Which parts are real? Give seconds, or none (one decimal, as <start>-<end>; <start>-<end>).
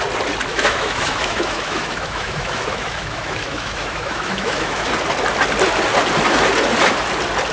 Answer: 0.0-0.5; 4.9-7.5